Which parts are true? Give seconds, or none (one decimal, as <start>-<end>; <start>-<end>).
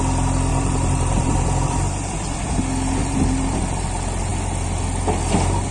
0.0-0.5; 2.6-3.0; 3.6-5.7